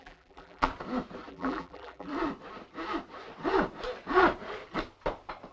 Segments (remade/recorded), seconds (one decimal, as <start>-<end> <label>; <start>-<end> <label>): 0.0-0.7 remade; 0.7-1.3 recorded; 1.3-2.1 remade; 2.1-5.5 recorded